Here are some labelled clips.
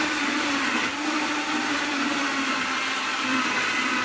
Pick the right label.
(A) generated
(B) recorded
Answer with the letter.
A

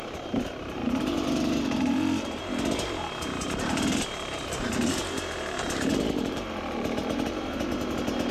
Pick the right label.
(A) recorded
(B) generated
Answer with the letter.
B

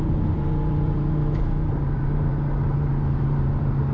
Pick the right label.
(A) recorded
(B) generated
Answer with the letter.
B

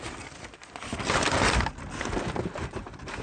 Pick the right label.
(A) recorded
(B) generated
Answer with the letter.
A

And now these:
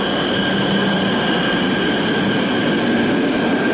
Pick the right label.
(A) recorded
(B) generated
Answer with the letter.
A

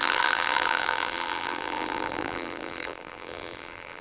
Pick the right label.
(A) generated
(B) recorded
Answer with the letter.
A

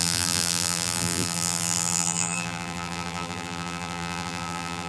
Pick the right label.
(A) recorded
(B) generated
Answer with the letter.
B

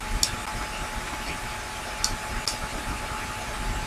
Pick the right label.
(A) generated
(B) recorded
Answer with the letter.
B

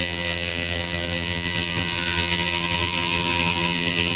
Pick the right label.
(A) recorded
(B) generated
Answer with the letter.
B